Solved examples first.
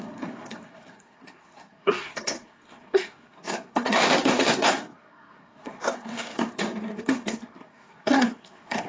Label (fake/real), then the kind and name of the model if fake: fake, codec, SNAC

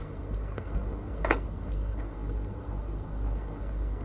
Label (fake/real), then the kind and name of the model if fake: fake, codec, SNAC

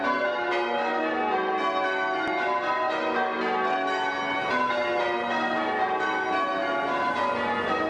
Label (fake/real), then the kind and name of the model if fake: real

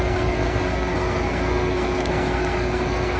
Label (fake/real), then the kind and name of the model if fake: fake, codec, SNAC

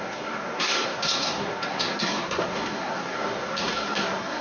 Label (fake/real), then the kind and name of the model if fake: fake, codec, SNAC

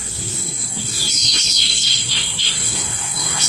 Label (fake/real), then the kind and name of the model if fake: fake, codec, SNAC